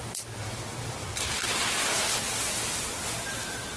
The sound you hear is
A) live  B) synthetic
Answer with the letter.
A